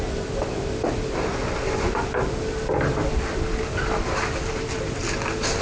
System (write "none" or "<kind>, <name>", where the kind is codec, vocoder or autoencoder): none